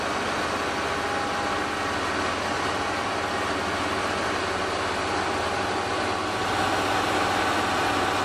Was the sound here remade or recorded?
recorded